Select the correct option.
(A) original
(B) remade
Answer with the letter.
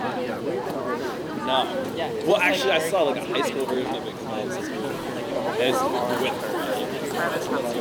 B